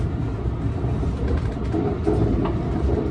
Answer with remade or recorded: recorded